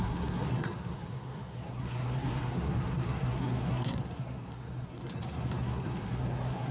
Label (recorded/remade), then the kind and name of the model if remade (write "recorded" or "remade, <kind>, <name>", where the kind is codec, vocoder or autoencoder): remade, codec, SNAC